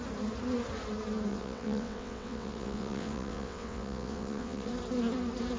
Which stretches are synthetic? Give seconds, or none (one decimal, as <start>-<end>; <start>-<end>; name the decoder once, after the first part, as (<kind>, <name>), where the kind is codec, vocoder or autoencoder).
1.3-4.7 (vocoder, WaveNeXt)